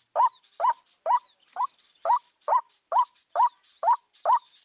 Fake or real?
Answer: real